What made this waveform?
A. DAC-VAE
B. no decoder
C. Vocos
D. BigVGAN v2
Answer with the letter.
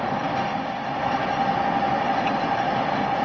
B